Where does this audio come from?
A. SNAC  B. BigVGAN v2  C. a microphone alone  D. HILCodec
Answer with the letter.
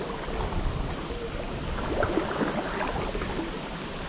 C